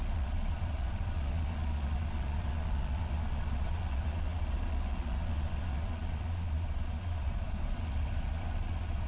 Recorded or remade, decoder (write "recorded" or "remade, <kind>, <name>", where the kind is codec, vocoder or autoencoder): remade, vocoder, Vocos